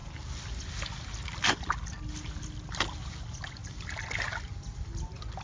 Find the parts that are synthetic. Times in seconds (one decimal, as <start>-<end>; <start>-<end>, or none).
none